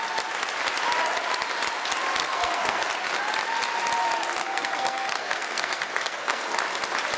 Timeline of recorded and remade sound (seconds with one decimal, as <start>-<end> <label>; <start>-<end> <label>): 0.0-2.2 recorded; 2.2-2.9 remade; 2.9-4.4 recorded; 4.4-6.6 remade; 6.6-7.2 recorded